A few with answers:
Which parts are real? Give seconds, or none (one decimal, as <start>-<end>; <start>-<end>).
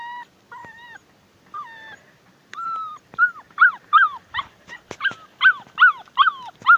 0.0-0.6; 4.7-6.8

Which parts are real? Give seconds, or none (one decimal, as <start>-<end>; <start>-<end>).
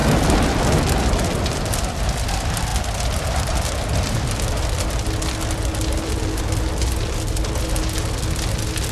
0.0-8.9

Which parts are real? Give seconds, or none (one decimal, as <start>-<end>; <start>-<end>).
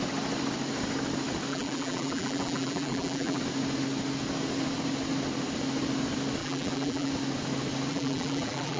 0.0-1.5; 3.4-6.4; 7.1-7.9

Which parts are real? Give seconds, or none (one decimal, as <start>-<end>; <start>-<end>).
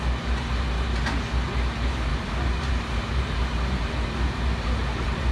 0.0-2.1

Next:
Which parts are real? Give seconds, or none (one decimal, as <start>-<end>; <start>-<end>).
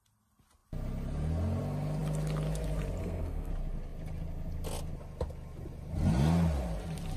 0.0-3.0; 3.5-7.2